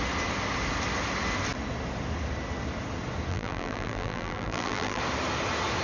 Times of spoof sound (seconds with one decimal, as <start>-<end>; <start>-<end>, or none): 3.3-5.0